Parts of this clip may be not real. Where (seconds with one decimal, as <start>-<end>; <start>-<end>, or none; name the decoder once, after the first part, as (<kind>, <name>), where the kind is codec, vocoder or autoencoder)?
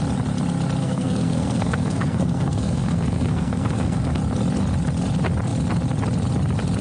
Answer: 0.8-4.2 (codec, SNAC)